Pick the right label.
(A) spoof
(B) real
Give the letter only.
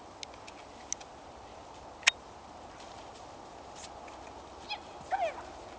B